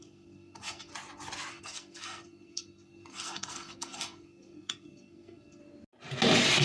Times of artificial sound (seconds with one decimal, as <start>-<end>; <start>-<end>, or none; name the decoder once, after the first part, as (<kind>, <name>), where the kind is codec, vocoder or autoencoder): 0.0-0.9 (codec, SNAC); 1.5-5.6